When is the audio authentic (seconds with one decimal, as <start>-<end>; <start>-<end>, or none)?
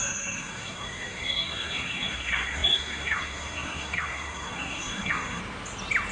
5.4-6.1